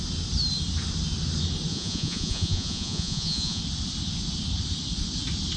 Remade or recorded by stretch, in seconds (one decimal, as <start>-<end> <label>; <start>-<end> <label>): 0.0-1.7 recorded; 1.7-3.6 remade; 3.6-5.6 recorded